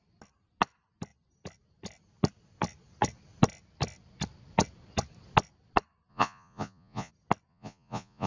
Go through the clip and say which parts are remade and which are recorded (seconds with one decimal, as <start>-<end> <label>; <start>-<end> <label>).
0.0-6.1 recorded; 6.1-7.1 remade; 7.1-7.5 recorded; 7.5-8.3 remade